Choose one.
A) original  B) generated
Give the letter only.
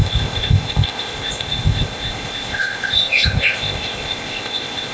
B